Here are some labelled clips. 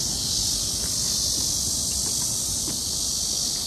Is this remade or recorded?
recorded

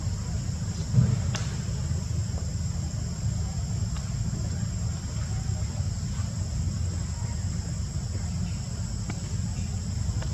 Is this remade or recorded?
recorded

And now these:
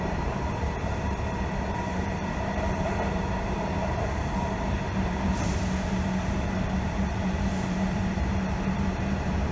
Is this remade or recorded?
remade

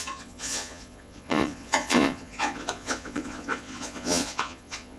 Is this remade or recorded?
remade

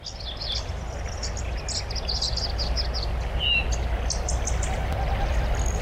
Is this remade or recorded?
recorded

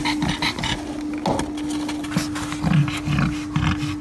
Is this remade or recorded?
recorded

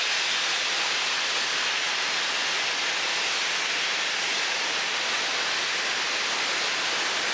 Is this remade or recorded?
recorded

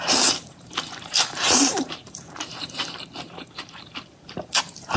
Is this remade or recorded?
remade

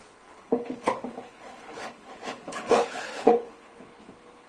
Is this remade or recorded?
remade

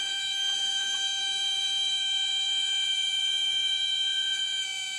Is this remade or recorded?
remade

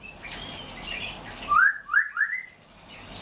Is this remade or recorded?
recorded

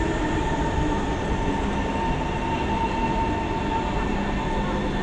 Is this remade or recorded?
recorded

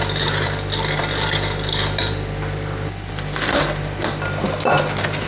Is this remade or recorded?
recorded